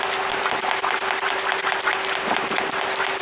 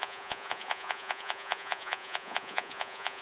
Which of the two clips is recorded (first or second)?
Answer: first